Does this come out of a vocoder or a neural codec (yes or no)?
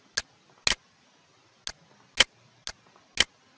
no